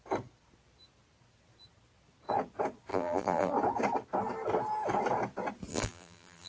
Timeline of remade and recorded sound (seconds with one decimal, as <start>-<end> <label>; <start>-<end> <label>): 0.0-2.9 recorded; 2.9-3.5 remade; 3.5-5.7 recorded; 5.7-6.5 remade

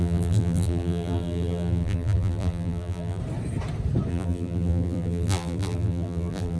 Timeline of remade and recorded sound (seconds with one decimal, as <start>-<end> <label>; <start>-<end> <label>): 0.0-3.2 remade; 3.2-4.1 recorded; 4.1-6.6 remade